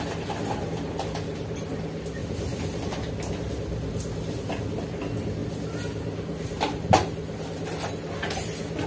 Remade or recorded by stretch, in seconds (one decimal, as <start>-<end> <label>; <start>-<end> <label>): 0.0-8.9 recorded